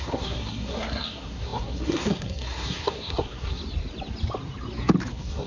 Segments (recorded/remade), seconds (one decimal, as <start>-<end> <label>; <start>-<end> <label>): 0.0-3.6 remade; 3.6-5.1 recorded; 5.1-5.5 remade